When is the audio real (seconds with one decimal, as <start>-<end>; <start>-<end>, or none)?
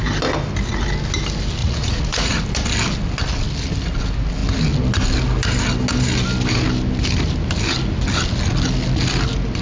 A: 0.0-1.6; 2.3-9.6